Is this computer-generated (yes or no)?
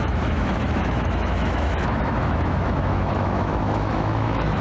yes